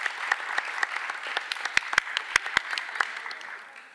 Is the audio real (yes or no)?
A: yes